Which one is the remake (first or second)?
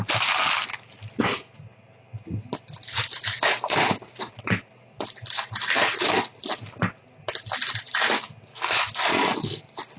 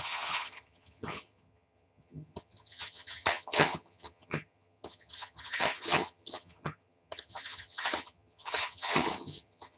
second